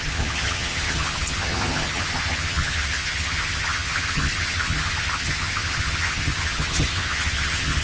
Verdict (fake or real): fake